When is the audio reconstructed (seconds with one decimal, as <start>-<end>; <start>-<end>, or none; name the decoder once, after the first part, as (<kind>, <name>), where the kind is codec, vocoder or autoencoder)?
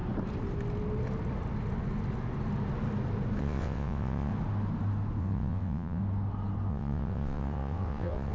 3.4-4.3 (vocoder, WaveNeXt); 5.2-6.0; 6.7-8.3